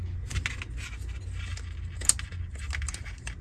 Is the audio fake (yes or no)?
no